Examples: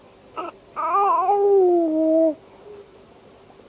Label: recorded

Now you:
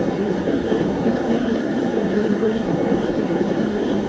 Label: remade